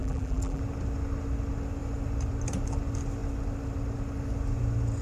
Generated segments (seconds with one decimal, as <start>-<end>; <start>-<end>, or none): 0.0-0.6